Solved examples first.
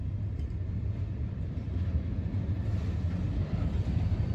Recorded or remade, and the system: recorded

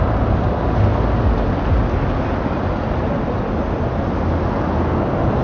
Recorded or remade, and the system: recorded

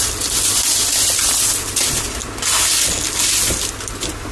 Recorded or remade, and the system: recorded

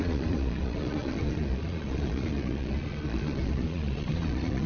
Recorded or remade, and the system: remade, vocoder, Vocos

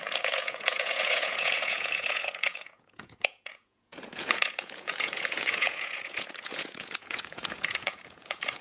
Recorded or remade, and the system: remade, vocoder, Vocos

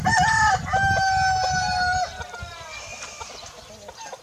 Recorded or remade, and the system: recorded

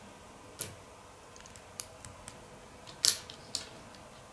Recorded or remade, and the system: recorded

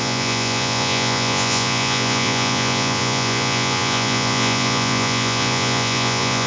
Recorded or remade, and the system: remade, vocoder, Vocos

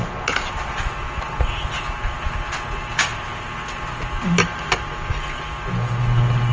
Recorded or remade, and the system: recorded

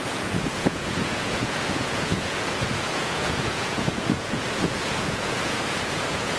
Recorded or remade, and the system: remade, vocoder, Vocos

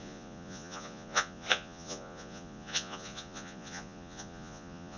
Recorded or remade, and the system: remade, vocoder, Vocos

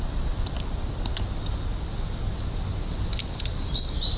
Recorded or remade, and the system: recorded